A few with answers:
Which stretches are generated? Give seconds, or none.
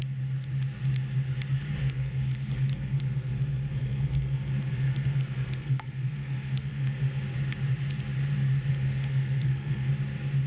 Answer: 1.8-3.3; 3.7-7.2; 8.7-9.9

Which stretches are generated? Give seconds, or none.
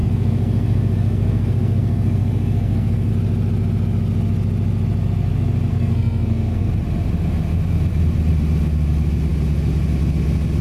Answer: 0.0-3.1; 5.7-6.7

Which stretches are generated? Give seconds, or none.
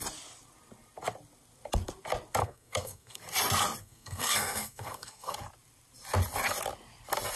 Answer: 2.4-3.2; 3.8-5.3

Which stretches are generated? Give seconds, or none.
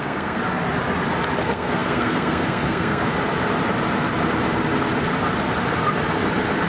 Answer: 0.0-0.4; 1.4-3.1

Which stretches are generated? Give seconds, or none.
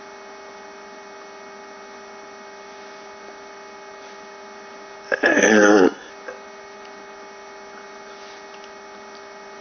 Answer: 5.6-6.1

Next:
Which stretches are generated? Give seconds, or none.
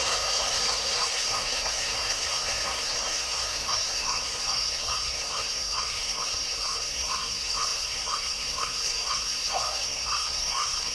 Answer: 0.0-10.9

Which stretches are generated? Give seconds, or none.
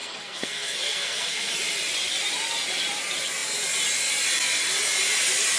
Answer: 0.0-1.5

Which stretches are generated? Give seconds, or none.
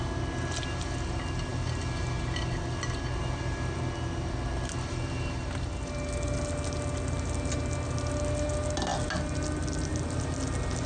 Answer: none